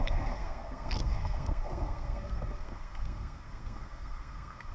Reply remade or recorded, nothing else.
remade